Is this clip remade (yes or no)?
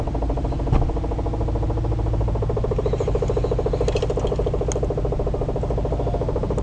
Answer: no